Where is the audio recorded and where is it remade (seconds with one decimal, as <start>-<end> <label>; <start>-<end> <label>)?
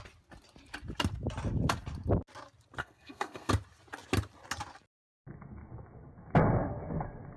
0.0-2.8 recorded; 2.8-3.5 remade; 3.5-7.4 recorded